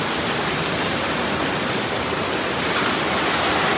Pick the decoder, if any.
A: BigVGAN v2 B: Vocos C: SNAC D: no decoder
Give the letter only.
D